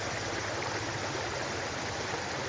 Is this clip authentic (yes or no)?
yes